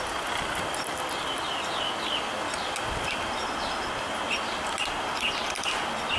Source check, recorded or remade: recorded